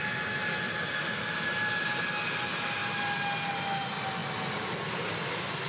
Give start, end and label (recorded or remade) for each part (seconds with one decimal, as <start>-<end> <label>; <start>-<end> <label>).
0.0-5.7 recorded